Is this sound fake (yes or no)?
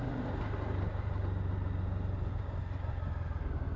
no